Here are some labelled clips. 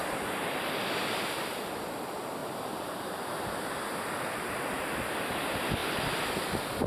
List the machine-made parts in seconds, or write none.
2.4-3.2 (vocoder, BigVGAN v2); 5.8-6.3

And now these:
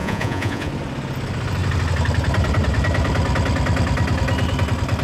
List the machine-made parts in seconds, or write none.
0.0-0.7 (vocoder, Vocos)

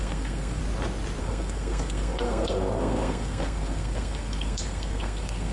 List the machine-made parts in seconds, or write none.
0.0-0.6 (codec, SNAC); 1.2-5.5

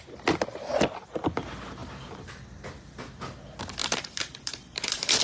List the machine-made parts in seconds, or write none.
1.8-2.3 (vocoder, BigVGAN v2); 3.8-5.2

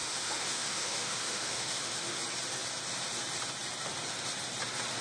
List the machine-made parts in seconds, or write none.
0.0-2.2 (autoencoder, DAC-VAE)

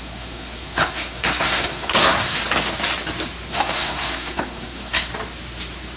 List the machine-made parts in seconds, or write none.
0.0-2.4 (codec, SNAC); 3.5-5.1

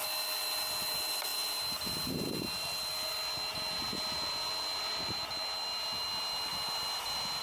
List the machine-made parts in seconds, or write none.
none